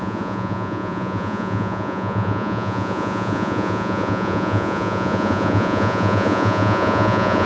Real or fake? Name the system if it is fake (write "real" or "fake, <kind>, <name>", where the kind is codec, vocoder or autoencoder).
fake, vocoder, Vocos